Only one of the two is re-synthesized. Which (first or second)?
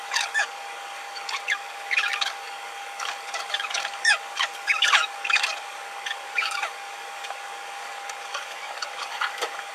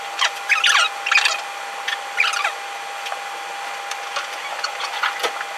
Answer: first